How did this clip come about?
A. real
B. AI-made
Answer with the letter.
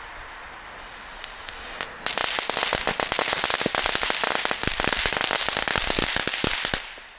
A